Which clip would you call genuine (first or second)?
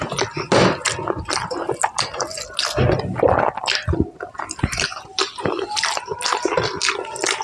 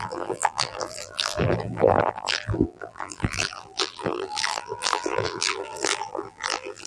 first